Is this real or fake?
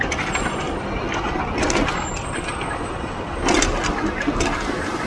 real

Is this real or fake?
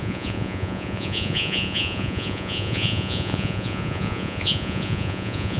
fake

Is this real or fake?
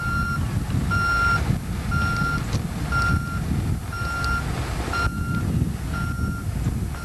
real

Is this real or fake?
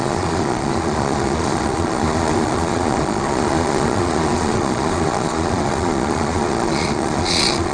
fake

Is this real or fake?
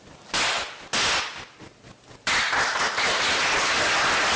real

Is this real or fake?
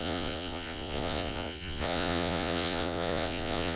fake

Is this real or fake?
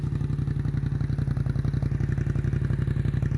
real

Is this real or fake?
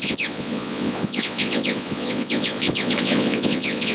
fake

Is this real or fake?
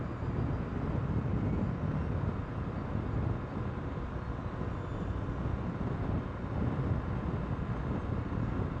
real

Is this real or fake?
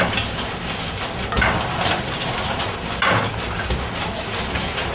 real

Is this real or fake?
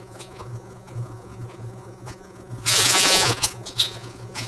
fake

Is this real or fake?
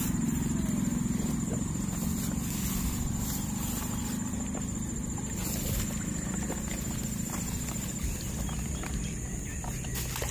real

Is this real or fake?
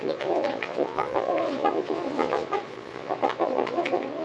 fake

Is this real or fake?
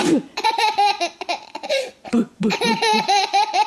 fake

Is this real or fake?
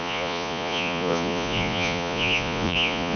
fake